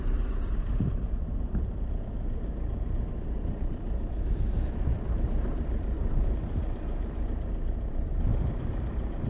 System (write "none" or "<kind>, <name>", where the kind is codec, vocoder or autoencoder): vocoder, BigVGAN v2